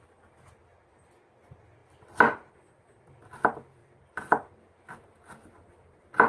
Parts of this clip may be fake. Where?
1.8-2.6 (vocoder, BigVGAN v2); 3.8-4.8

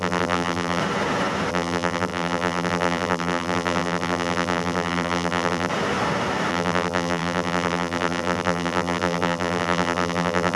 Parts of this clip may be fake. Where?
0.0-0.8 (vocoder, BigVGAN v2); 1.5-5.7; 6.5-10.6

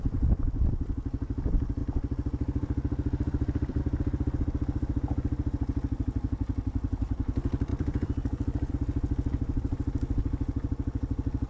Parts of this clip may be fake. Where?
1.8-3.8 (vocoder, BigVGAN v2); 7.7-8.7